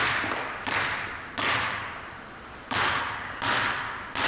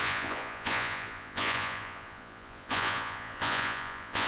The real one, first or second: first